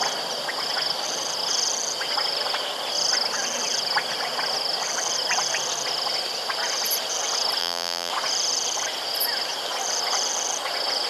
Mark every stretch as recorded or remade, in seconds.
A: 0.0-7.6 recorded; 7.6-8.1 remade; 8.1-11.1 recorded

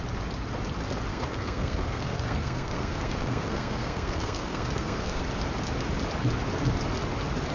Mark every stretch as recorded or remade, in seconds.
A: 0.0-1.1 recorded; 1.1-5.2 remade; 5.2-7.5 recorded

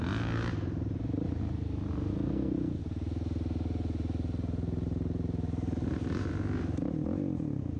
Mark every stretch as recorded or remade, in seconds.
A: 0.0-2.1 recorded; 2.1-2.8 remade; 2.8-7.8 recorded

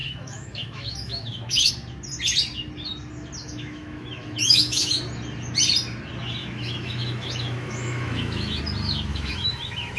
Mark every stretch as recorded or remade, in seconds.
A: 0.0-1.7 remade; 1.7-3.4 recorded; 3.4-5.0 remade; 5.0-6.4 recorded; 6.4-8.6 remade; 8.6-9.1 recorded; 9.1-10.0 remade

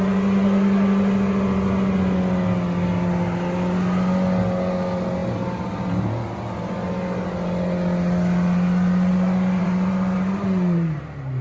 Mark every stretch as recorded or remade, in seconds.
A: 0.0-9.6 recorded; 9.6-11.0 remade; 11.0-11.4 recorded

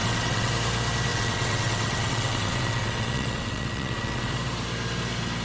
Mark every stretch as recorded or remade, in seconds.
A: 0.0-0.5 remade; 0.5-1.1 recorded; 1.1-4.3 remade; 4.3-5.4 recorded

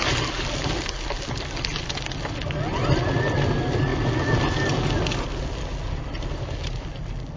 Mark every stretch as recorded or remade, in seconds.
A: 0.0-7.4 recorded

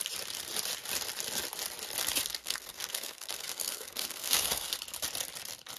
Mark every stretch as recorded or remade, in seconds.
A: 0.0-2.4 recorded; 2.4-4.8 remade; 4.8-5.8 recorded